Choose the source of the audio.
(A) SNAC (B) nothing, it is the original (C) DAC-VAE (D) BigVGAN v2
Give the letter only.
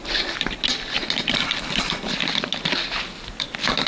B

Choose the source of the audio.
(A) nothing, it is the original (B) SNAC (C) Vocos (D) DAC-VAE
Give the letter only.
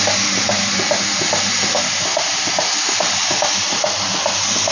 A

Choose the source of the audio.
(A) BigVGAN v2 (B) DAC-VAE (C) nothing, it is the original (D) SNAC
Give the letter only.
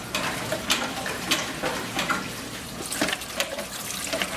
C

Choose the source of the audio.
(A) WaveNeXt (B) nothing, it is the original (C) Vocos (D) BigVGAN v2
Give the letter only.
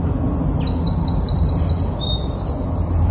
B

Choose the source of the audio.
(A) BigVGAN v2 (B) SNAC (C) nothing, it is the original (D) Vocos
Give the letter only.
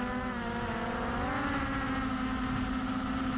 C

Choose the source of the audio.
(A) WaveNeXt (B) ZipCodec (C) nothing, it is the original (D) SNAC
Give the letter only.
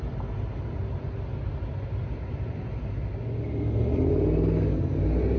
C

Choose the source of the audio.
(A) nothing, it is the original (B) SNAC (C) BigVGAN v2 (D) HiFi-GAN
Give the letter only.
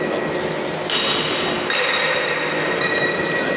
A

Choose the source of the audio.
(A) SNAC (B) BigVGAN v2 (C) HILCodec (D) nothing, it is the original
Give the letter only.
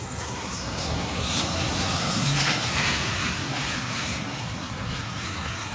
A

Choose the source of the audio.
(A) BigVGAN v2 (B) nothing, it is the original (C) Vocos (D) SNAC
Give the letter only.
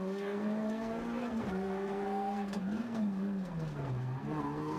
D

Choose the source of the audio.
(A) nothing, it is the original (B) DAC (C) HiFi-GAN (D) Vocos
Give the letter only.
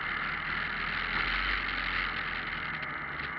A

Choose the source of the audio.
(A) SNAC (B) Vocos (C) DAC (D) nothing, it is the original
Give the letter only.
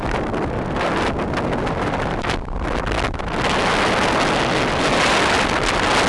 D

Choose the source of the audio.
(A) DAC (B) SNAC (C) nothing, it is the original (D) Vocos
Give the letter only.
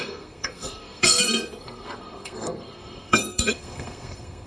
B